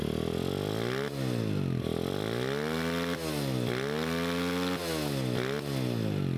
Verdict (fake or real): real